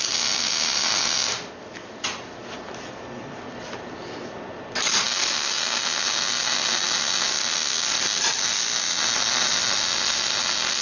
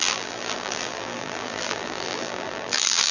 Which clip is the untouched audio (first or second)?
first